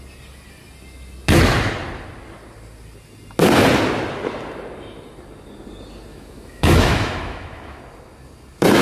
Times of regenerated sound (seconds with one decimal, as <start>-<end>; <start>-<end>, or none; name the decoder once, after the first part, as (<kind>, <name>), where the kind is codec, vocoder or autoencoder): 6.1-7.8 (autoencoder, DAC-VAE)